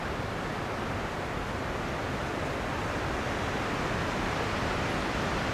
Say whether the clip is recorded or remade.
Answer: recorded